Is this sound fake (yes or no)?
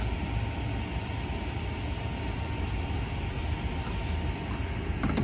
no